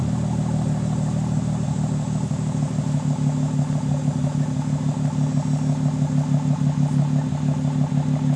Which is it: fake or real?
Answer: real